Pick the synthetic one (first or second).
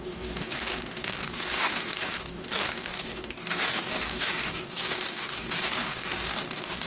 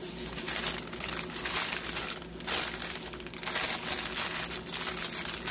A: first